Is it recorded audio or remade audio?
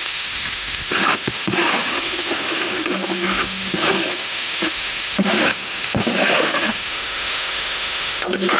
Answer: remade